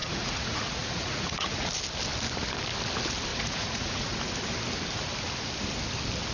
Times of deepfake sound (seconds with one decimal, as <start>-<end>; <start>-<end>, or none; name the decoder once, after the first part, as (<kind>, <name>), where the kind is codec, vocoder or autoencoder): 0.0-1.7 (vocoder, Vocos); 3.3-4.2